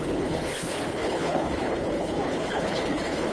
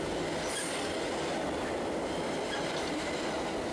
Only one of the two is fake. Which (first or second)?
first